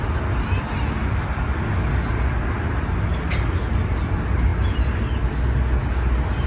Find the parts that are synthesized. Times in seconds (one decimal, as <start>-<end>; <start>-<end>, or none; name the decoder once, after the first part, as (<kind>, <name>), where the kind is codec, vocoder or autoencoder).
none